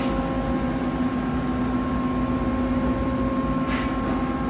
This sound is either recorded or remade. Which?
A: recorded